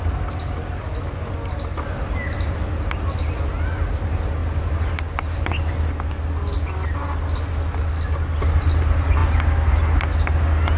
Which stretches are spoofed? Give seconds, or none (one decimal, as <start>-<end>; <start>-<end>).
none